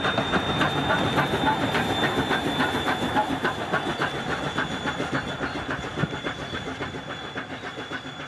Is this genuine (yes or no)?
yes